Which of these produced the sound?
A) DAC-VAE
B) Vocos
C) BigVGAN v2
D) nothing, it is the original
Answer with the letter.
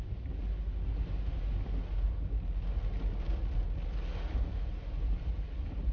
D